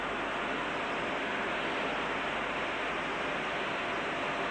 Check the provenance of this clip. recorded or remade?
recorded